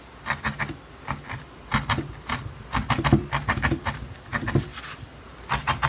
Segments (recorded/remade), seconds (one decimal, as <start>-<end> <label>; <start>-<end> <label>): 0.0-5.9 recorded